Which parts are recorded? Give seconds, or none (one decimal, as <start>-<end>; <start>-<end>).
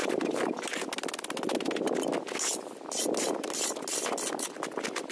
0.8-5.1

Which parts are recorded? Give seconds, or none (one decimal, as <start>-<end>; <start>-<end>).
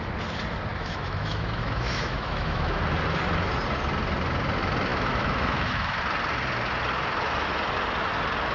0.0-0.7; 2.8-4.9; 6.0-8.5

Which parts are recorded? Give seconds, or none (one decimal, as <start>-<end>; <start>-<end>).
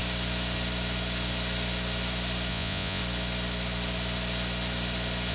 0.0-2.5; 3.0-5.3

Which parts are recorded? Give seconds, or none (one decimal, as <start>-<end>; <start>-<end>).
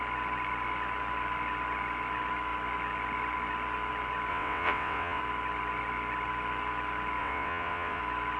0.0-4.3; 5.2-7.2; 8.0-8.4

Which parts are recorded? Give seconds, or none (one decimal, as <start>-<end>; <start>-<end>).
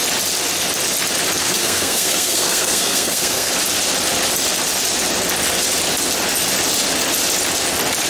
0.0-1.4; 3.5-8.1